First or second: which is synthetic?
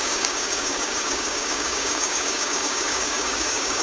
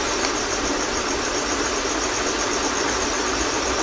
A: first